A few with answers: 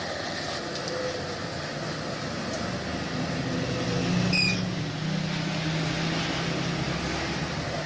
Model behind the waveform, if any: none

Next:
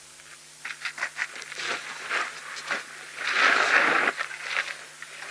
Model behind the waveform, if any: none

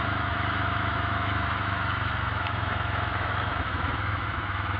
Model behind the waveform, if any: autoencoder, DAC-VAE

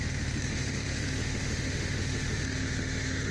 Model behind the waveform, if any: autoencoder, DAC-VAE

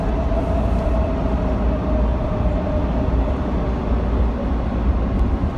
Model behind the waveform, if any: none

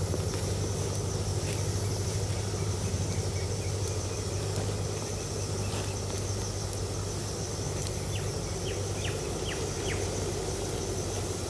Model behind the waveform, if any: none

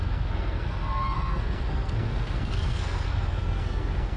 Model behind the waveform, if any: codec, SNAC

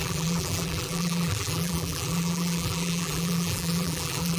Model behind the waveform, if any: vocoder, BigVGAN v2